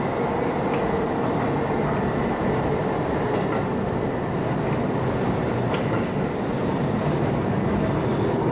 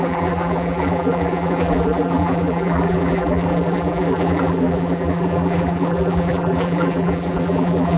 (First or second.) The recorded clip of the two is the first